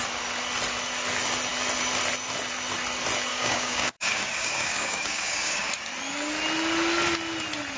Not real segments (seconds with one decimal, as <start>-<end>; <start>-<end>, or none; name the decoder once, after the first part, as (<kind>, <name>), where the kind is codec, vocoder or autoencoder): 3.3-5.7 (codec, DAC)